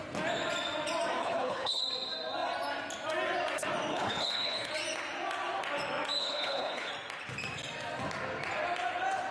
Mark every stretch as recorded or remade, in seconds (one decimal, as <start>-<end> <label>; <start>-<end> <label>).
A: 0.0-1.2 recorded; 1.2-1.8 remade; 1.8-3.9 recorded; 3.9-4.7 remade; 4.7-6.2 recorded; 6.2-6.9 remade; 6.9-9.3 recorded